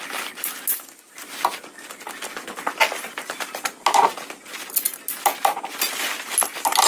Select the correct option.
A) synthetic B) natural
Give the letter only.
B